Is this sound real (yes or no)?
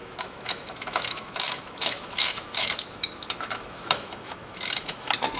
no